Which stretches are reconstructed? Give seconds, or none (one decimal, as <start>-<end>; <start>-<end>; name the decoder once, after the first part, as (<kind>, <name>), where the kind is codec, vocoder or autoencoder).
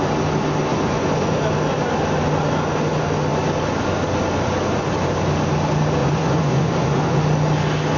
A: 0.7-1.4 (vocoder, Vocos); 6.0-7.2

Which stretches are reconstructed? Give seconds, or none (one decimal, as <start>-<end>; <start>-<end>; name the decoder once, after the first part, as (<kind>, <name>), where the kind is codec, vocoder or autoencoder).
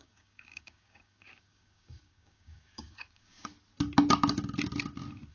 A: 0.0-3.5 (codec, DAC)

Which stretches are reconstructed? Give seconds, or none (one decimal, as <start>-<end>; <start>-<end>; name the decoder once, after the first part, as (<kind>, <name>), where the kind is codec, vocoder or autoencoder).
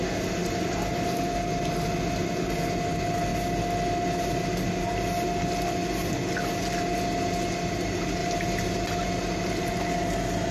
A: 8.2-9.1 (vocoder, BigVGAN v2)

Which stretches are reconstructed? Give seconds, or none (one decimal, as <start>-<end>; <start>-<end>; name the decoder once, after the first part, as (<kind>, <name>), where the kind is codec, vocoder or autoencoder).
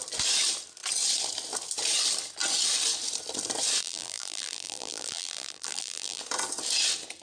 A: 3.8-6.2 (vocoder, BigVGAN v2)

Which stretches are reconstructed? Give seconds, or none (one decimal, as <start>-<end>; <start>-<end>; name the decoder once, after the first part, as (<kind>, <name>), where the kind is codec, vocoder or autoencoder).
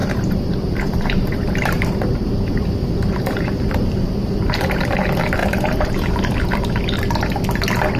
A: 0.0-4.8 (vocoder, BigVGAN v2); 5.4-6.1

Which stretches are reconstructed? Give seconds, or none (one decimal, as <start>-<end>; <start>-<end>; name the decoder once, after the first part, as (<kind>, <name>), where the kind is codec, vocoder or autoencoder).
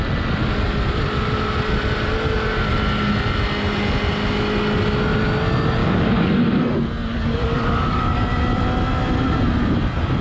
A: 5.8-6.3 (codec, DAC); 7.1-8.0